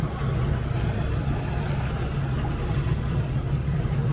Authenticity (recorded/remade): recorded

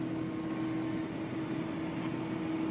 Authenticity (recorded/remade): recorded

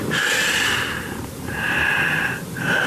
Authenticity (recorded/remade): recorded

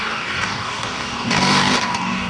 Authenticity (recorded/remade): remade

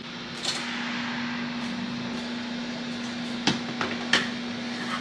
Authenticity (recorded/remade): recorded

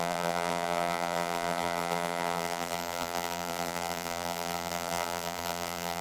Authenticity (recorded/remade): remade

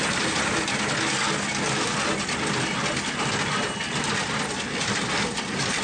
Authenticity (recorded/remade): recorded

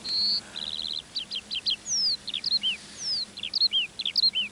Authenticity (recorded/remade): recorded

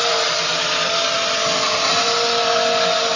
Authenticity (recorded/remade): recorded